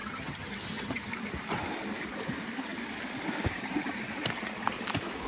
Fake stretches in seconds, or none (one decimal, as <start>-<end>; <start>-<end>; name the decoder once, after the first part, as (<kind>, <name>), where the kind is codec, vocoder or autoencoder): 0.0-1.1 (vocoder, HiFi-GAN)